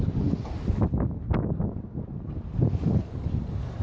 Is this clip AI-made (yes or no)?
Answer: no